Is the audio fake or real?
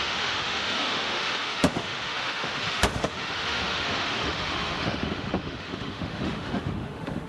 fake